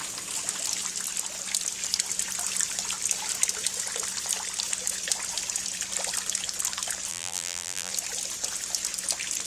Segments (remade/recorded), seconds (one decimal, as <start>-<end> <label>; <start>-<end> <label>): 0.0-7.1 recorded; 7.1-7.9 remade; 7.9-9.5 recorded

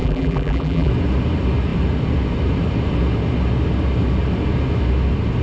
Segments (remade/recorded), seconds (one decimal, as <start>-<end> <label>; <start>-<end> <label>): 0.0-0.9 remade; 0.9-5.4 recorded

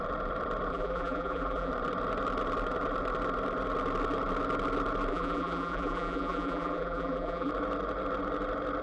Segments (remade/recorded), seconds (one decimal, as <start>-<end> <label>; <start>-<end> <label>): 0.0-0.7 recorded; 0.7-1.7 remade; 1.7-5.1 recorded; 5.1-7.5 remade; 7.5-8.8 recorded

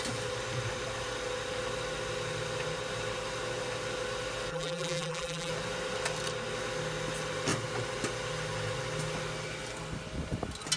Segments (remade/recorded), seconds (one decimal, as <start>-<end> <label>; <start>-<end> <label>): 0.0-4.5 recorded; 4.5-5.5 remade; 5.5-10.8 recorded

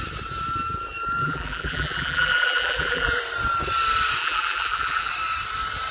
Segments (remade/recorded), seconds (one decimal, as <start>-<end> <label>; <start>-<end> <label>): 0.0-1.2 recorded; 1.2-3.2 remade; 3.2-4.2 recorded; 4.2-5.1 remade; 5.1-5.9 recorded

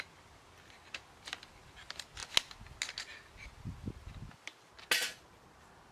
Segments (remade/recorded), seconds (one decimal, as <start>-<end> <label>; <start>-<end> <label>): 0.0-5.9 recorded

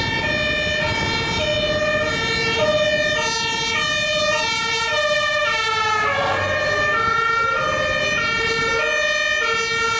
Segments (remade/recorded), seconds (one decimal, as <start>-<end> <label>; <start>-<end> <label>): 0.0-10.0 recorded